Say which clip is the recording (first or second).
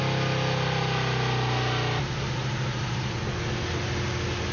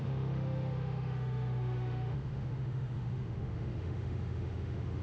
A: first